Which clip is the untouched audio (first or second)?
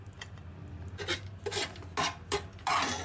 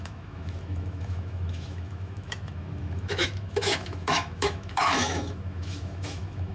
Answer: first